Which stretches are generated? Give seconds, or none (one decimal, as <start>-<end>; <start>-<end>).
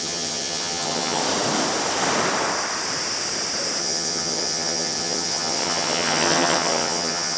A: 0.0-1.2; 3.8-7.4